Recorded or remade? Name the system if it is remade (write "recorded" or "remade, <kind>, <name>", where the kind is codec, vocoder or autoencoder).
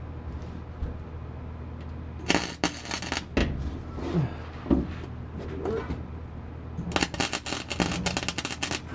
recorded